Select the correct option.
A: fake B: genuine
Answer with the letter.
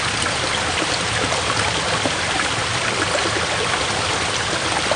B